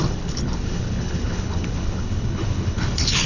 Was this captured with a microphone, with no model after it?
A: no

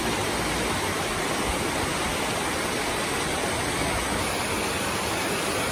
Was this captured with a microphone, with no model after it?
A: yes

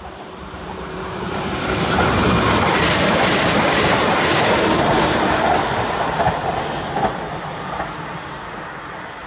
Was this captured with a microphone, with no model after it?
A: yes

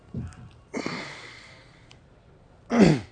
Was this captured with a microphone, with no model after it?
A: yes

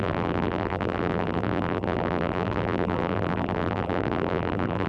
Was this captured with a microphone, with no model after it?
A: no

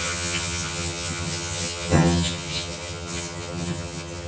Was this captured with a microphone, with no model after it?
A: no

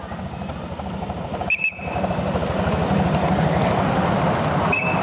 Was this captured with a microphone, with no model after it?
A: yes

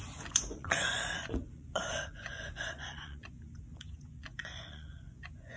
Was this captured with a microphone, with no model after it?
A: no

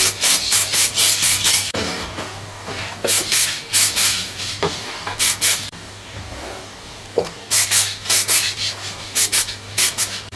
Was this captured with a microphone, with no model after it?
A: no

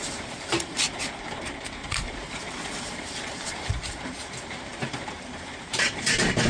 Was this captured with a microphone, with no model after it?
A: no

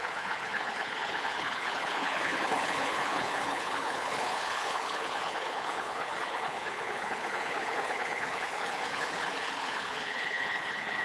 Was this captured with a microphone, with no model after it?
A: no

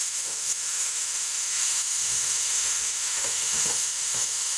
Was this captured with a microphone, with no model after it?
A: no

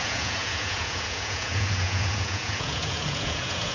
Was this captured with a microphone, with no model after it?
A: no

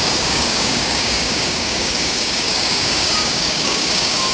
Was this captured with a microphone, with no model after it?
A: no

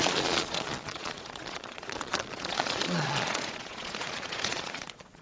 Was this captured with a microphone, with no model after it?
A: no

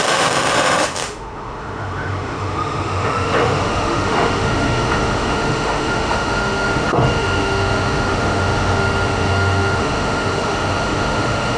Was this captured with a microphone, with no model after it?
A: no